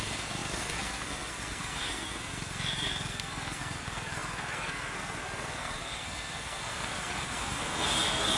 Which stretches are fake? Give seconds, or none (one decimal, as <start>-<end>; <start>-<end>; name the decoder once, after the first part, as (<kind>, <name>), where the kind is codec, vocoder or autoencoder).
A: 0.0-8.4 (codec, SNAC)